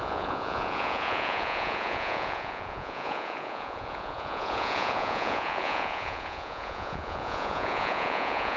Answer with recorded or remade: remade